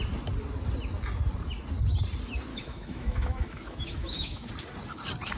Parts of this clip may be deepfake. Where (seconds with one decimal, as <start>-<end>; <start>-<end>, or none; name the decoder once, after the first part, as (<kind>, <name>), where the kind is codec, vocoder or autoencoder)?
2.5-4.5 (autoencoder, DAC-VAE)